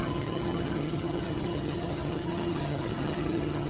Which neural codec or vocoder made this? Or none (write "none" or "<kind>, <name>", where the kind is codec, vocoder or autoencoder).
vocoder, HiFi-GAN